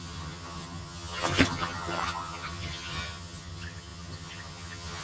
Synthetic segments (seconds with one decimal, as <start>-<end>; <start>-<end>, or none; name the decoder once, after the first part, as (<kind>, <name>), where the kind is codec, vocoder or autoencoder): 0.0-5.0 (vocoder, HiFi-GAN)